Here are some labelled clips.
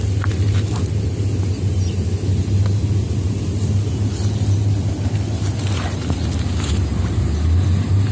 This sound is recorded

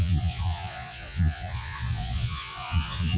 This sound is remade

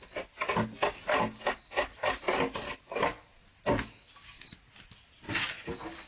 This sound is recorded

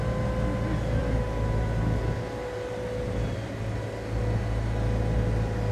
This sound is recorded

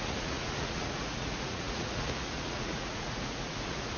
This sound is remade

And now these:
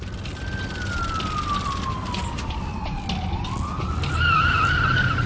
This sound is recorded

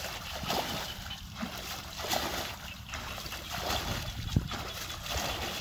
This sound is remade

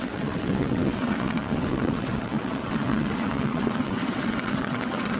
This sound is remade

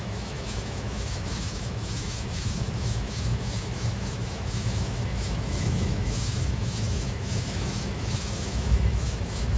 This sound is remade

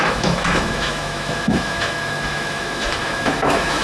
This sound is remade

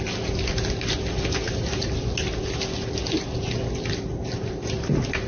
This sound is recorded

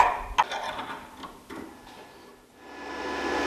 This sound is recorded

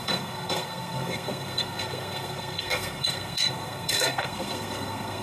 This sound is remade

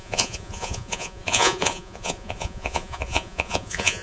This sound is remade